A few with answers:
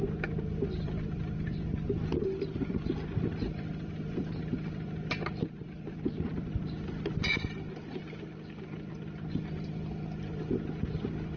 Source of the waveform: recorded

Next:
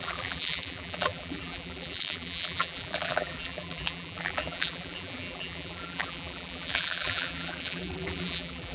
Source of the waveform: remade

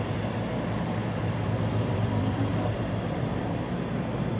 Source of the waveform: remade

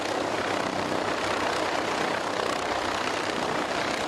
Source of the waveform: recorded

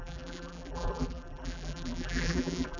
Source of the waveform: remade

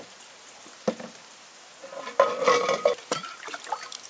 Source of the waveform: remade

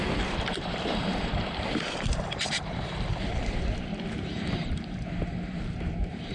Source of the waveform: remade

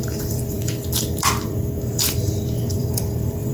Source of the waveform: remade